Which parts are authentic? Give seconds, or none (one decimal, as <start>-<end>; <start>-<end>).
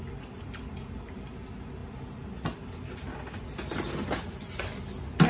0.0-5.3